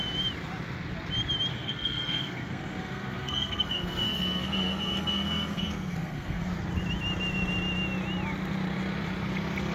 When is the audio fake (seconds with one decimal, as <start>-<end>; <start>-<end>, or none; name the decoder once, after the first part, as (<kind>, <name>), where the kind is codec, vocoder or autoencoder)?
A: 1.5-6.5 (codec, SNAC)